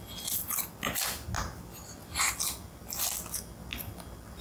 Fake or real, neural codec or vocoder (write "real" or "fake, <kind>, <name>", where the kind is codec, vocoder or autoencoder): real